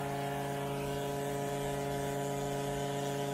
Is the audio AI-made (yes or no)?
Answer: no